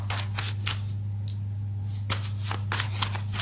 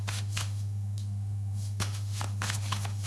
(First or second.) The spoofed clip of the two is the second